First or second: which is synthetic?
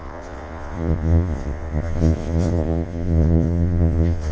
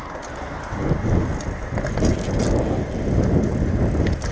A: first